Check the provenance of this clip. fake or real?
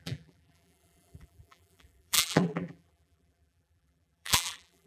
fake